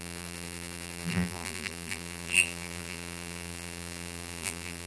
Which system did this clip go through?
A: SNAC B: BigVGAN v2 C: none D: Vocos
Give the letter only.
B